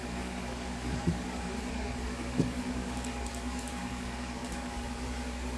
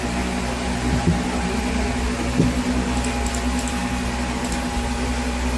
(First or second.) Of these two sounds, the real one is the second